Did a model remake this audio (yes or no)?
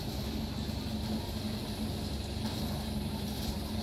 no